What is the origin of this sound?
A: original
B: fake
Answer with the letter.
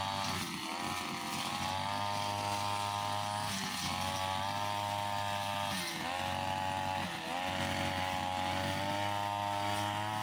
A